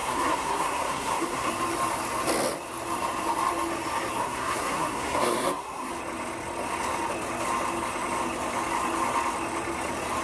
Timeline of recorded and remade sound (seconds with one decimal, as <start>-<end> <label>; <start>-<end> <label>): 0.0-1.5 remade; 1.5-4.2 recorded; 4.2-5.9 remade; 5.9-10.2 recorded